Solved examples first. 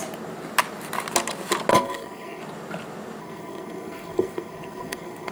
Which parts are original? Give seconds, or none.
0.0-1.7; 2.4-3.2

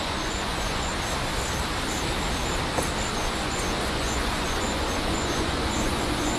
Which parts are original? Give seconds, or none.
0.9-3.1

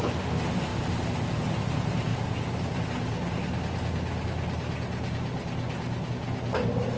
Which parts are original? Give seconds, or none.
0.0-7.0

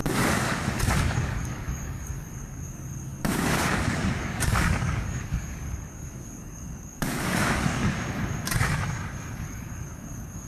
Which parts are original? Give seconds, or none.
7.8-9.4